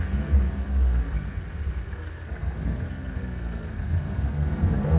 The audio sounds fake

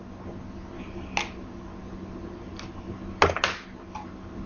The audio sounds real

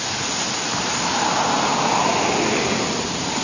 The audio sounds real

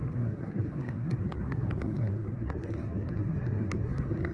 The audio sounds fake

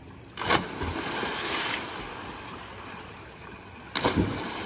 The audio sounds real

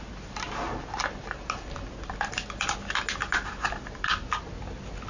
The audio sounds real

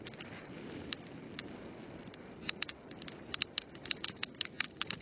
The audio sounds real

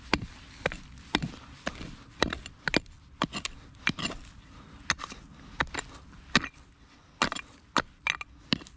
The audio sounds real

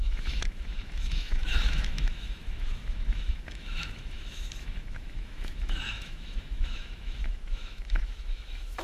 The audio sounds fake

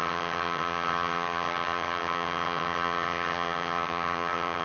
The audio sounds fake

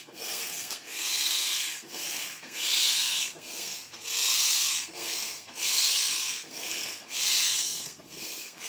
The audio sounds fake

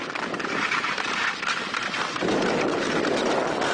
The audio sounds real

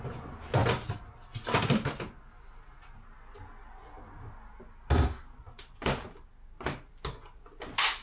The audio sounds real